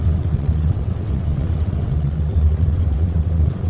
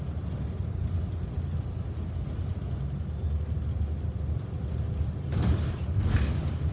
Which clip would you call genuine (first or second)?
second